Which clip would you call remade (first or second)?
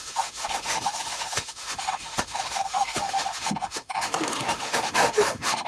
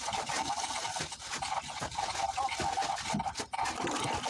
first